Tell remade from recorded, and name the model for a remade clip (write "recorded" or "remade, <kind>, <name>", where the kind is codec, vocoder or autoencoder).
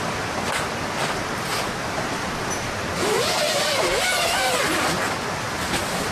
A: recorded